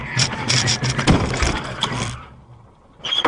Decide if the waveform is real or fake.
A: fake